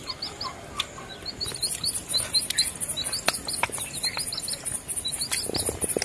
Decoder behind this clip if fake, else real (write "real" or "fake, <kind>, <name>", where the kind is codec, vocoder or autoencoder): real